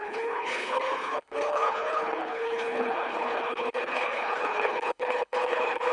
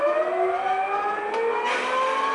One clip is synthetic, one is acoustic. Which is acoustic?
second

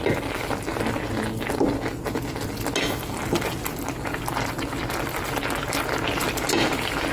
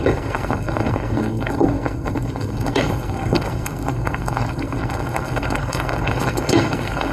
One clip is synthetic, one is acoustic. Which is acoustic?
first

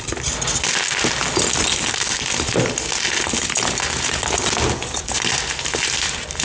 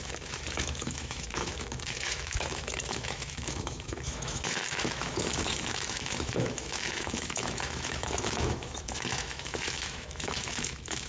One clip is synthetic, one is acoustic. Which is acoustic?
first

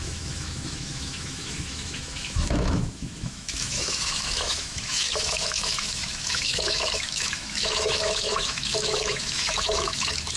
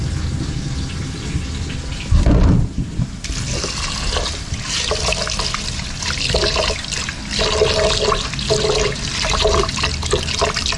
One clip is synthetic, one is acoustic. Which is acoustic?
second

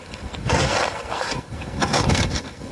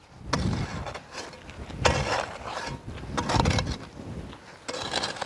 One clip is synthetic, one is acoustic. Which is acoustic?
second